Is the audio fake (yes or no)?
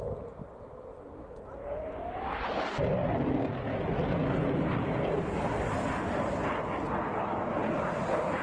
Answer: no